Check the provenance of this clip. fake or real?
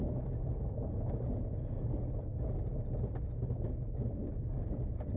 real